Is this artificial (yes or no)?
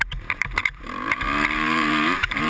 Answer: yes